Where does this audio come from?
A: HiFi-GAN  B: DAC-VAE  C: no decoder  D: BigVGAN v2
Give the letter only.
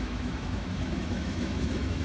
B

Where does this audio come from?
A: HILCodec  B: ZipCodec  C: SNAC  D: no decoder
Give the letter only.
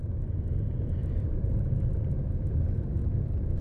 D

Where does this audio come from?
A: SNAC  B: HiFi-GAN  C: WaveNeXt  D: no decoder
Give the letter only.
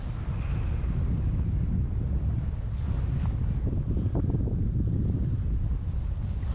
D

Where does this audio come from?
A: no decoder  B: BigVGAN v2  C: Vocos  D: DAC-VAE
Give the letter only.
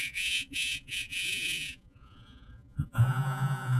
C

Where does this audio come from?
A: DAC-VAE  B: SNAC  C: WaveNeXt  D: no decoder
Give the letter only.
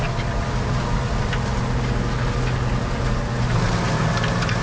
D